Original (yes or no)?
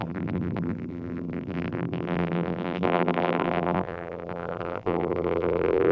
no